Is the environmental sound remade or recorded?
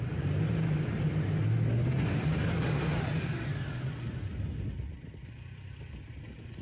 recorded